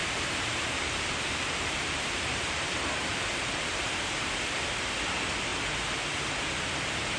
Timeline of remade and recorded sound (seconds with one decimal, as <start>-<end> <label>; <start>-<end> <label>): 0.0-4.3 remade; 4.3-7.2 recorded